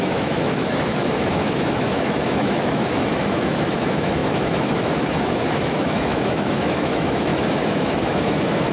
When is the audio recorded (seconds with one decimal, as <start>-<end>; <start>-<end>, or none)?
none